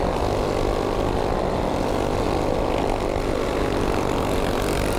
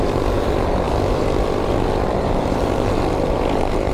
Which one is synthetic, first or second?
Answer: second